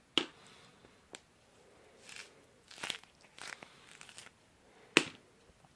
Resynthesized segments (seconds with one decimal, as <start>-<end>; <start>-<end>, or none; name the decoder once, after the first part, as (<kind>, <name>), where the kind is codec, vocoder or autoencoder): none